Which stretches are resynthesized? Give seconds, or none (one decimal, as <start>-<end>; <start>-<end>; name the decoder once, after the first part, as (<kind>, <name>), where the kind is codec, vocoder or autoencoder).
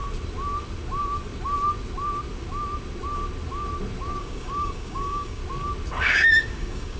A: 4.2-5.4 (codec, DAC); 6.0-7.0